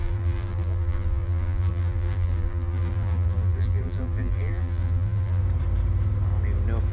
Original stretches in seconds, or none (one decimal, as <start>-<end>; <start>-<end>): 5.4-6.9